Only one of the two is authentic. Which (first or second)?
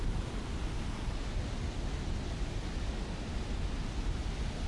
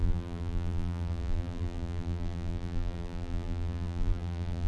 first